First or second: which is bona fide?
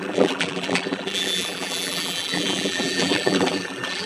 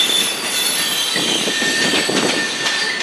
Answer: second